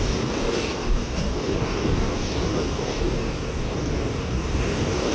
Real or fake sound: fake